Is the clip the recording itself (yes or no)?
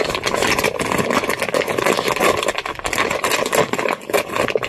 yes